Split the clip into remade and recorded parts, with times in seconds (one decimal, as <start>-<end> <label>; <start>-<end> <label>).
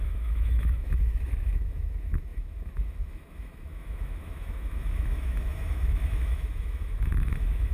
0.0-7.7 remade